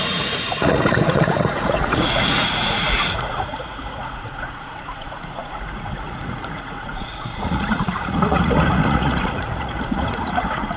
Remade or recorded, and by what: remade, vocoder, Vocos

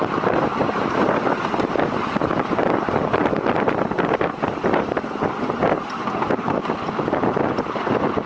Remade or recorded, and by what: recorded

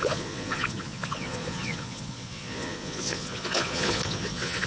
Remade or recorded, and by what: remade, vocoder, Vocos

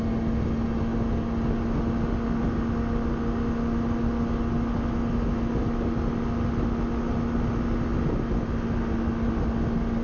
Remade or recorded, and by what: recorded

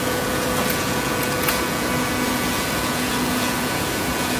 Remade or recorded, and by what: remade, vocoder, Vocos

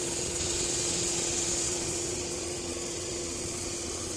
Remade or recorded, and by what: remade, vocoder, Vocos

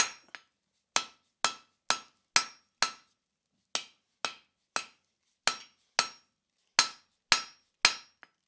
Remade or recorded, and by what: recorded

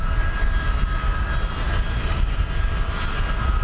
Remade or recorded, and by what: recorded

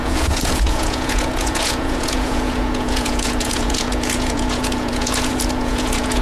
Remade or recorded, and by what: remade, vocoder, Vocos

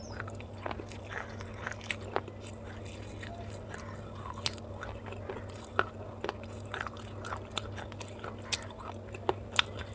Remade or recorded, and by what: recorded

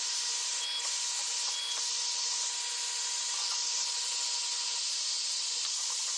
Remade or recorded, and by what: recorded